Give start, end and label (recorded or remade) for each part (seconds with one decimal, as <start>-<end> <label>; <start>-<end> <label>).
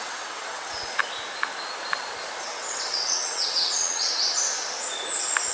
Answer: 0.0-1.0 remade; 1.0-2.4 recorded; 2.4-4.1 remade; 4.1-5.5 recorded